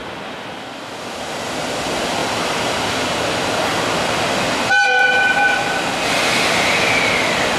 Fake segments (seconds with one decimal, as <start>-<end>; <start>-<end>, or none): none